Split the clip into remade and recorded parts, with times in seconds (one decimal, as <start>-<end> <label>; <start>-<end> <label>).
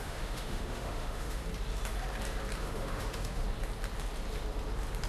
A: 0.0-1.4 remade; 1.4-2.6 recorded; 2.6-3.4 remade; 3.4-5.1 recorded